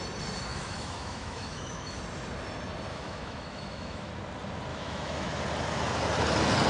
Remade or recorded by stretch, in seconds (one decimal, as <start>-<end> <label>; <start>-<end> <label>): 0.0-0.5 recorded; 0.5-2.0 remade; 2.0-2.9 recorded; 2.9-4.1 remade; 4.1-4.7 recorded; 4.7-5.4 remade; 5.4-6.7 recorded